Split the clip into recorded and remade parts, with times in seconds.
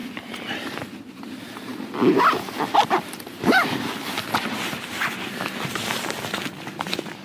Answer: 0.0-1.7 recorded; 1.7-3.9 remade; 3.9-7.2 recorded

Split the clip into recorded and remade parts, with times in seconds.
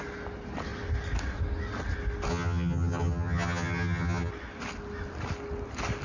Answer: 0.0-2.3 recorded; 2.3-4.3 remade; 4.3-6.0 recorded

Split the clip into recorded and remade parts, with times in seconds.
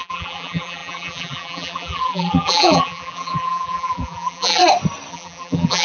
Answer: 0.0-4.6 remade; 4.6-5.1 recorded; 5.1-5.8 remade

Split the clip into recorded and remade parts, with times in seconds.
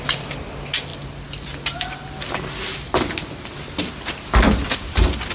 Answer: 0.0-5.3 recorded